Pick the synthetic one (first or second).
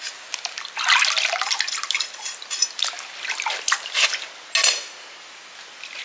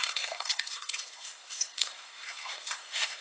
second